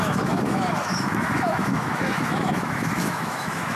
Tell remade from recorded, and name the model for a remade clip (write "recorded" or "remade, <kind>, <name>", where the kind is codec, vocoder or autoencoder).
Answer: remade, autoencoder, DAC-VAE